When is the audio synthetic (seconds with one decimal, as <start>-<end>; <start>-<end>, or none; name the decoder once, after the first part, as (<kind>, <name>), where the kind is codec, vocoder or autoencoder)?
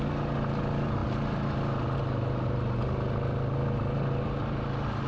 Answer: none